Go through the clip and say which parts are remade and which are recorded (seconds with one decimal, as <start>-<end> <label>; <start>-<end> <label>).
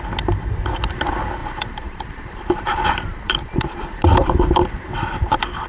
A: 0.0-1.4 recorded; 1.4-4.8 remade; 4.8-5.7 recorded